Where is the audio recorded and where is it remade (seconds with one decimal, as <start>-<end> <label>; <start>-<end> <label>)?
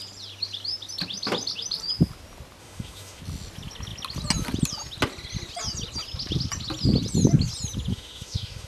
0.0-2.6 recorded; 2.6-3.2 remade; 3.2-7.9 recorded; 7.9-8.7 remade